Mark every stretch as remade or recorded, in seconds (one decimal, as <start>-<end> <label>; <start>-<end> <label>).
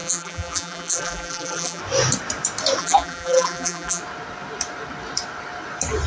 0.0-1.8 remade; 1.8-2.8 recorded; 2.8-4.0 remade; 4.0-6.1 recorded